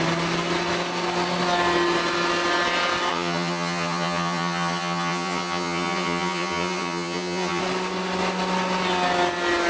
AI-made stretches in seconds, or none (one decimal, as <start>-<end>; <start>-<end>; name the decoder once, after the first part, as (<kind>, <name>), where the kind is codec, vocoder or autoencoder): 3.1-7.6 (vocoder, HiFi-GAN)